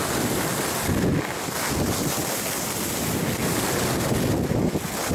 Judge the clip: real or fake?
real